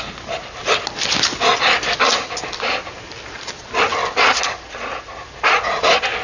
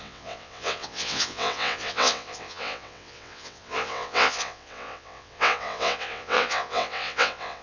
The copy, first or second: second